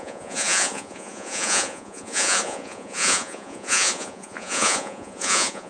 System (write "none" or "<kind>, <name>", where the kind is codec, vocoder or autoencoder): vocoder, Vocos